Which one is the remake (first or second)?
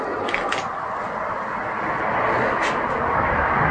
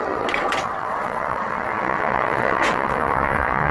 second